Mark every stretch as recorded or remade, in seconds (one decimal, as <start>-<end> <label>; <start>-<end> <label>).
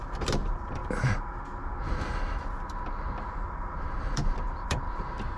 0.0-0.8 remade; 0.8-3.3 recorded; 3.3-5.4 remade